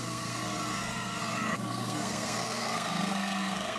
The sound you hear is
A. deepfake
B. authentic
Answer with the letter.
A